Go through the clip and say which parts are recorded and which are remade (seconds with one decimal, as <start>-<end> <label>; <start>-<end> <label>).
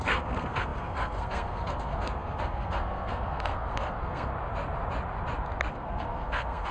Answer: 0.0-4.3 remade; 4.3-5.7 recorded; 5.7-6.7 remade